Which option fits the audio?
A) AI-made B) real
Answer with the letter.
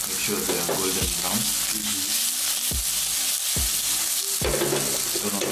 B